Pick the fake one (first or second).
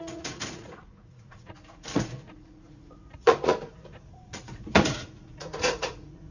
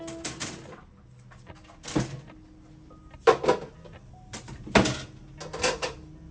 first